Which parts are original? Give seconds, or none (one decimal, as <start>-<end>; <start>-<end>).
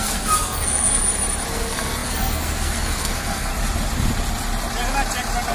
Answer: 1.0-1.5; 3.5-5.5